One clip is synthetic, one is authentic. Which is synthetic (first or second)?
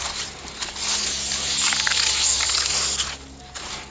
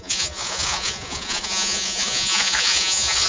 second